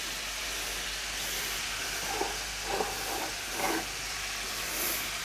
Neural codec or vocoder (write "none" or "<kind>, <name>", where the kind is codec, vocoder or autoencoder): none